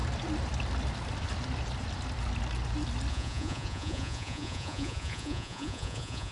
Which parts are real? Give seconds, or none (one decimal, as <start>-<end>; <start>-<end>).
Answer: 0.0-3.1